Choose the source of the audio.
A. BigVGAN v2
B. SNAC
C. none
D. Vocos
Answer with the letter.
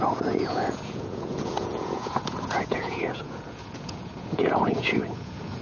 D